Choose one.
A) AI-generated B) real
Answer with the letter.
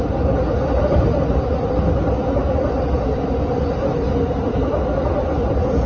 B